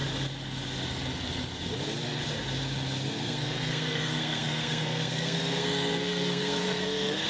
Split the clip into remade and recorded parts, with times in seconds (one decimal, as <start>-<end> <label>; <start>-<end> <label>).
0.0-3.1 recorded; 3.1-7.3 remade